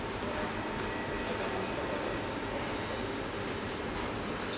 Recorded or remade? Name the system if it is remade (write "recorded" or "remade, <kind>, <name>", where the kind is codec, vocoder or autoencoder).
recorded